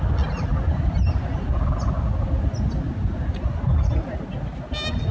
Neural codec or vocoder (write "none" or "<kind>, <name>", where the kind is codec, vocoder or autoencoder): none